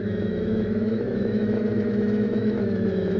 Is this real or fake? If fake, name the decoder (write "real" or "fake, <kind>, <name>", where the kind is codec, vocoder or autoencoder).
fake, autoencoder, DAC-VAE